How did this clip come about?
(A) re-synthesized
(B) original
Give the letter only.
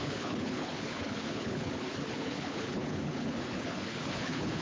A